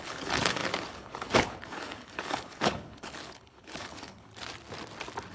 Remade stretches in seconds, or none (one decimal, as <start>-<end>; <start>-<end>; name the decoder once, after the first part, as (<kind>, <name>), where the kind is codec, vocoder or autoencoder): 0.0-4.3 (codec, HILCodec)